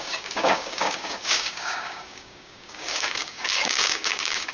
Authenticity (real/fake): fake